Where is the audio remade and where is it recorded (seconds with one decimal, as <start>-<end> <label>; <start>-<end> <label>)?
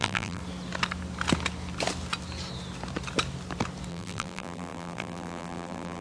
0.0-0.4 remade; 0.4-3.9 recorded; 3.9-6.0 remade